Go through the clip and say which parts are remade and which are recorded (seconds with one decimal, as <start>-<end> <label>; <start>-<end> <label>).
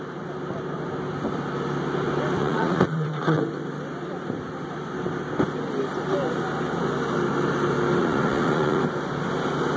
0.0-2.4 recorded; 2.4-3.4 remade; 3.4-8.0 recorded; 8.0-8.8 remade; 8.8-9.8 recorded